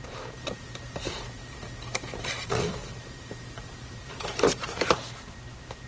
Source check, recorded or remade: remade